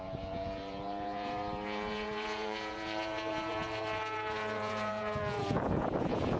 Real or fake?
fake